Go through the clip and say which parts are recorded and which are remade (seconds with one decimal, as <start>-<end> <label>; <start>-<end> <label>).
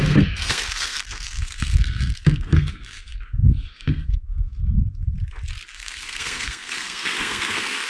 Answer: 0.0-4.6 remade; 4.6-5.7 recorded; 5.7-7.9 remade